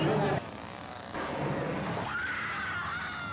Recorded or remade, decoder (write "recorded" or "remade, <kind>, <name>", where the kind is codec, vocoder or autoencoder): recorded